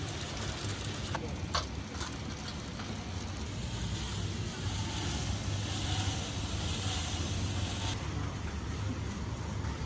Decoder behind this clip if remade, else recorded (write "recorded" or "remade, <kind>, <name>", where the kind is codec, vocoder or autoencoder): recorded